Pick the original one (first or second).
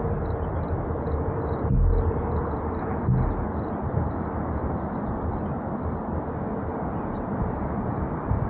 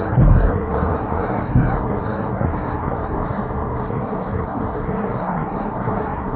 first